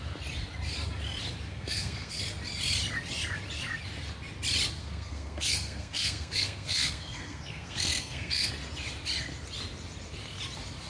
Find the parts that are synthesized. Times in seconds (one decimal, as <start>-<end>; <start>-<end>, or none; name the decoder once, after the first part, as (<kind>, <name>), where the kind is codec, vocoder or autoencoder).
1.5-2.2 (codec, SNAC); 4.8-8.5